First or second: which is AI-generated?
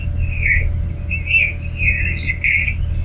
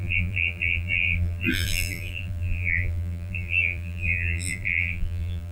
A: second